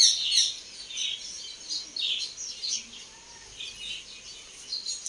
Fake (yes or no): no